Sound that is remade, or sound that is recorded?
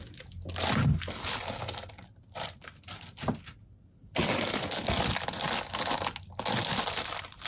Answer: recorded